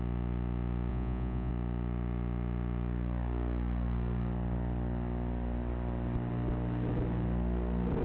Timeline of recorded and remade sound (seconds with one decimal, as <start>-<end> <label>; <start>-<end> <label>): 0.0-0.9 recorded; 0.9-1.5 remade; 1.5-8.0 recorded